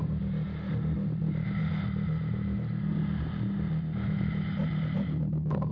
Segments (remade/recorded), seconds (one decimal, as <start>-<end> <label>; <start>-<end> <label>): 0.0-5.7 recorded